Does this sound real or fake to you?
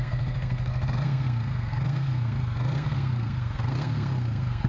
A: fake